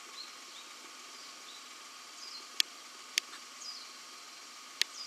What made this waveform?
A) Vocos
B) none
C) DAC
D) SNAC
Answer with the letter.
B